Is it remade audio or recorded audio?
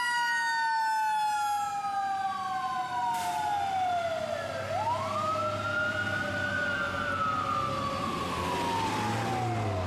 recorded